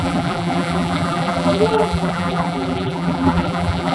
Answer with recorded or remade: remade